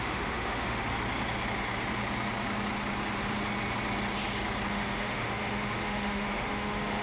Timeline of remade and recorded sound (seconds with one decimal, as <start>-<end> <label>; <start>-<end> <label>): 0.0-0.9 remade; 0.9-4.7 recorded; 4.7-7.0 remade